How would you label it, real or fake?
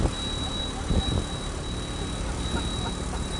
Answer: real